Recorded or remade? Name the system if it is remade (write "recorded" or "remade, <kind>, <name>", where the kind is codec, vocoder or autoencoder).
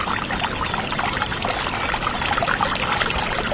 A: recorded